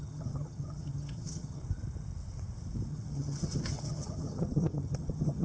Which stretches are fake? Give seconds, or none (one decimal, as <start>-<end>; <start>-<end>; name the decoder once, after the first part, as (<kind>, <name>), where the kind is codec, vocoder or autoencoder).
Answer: 0.0-1.6 (vocoder, HiFi-GAN); 2.9-5.4